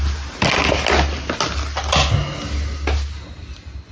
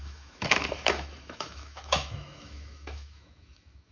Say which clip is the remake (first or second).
second